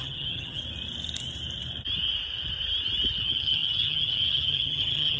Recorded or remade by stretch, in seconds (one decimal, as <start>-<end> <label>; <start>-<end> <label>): 0.0-0.6 remade; 0.6-3.2 recorded; 3.2-5.2 remade